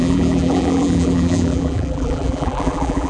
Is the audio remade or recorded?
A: remade